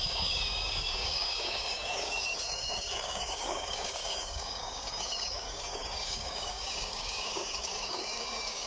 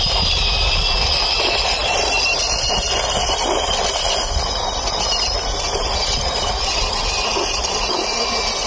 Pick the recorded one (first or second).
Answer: second